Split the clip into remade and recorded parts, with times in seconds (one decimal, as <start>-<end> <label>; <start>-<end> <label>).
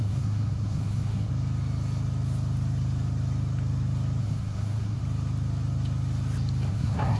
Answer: 0.0-1.3 remade; 1.3-4.2 recorded; 4.2-5.0 remade; 5.0-6.7 recorded; 6.7-7.2 remade